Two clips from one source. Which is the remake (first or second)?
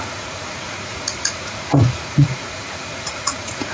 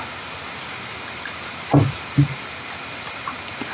first